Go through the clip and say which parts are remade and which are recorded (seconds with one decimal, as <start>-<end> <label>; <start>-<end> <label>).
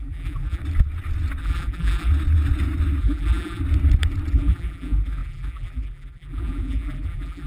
0.0-0.6 remade; 0.6-1.4 recorded; 1.4-2.1 remade; 2.1-3.0 recorded; 3.0-3.6 remade; 3.6-4.3 recorded; 4.3-7.5 remade